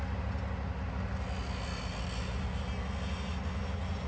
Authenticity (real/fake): real